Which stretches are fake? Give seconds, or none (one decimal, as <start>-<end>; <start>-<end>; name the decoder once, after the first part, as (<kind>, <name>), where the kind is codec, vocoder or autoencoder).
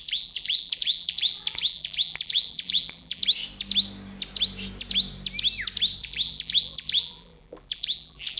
0.0-3.2 (vocoder, BigVGAN v2); 6.0-8.4